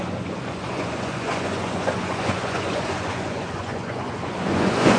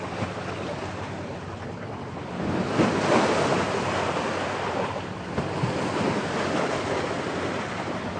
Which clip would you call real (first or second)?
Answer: second